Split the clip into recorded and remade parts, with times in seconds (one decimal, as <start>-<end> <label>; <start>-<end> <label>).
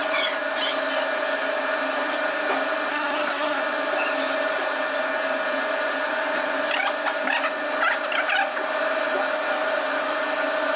0.0-2.9 recorded; 2.9-3.6 remade; 3.6-10.8 recorded